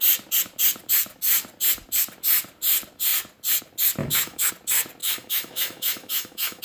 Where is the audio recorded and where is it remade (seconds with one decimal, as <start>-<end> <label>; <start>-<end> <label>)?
0.0-4.0 recorded; 4.0-4.5 remade; 4.5-5.0 recorded; 5.0-6.6 remade